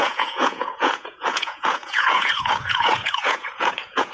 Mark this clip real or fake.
fake